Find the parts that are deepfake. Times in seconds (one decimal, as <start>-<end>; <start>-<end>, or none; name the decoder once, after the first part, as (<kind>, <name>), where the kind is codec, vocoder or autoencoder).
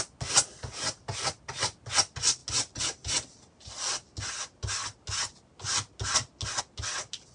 none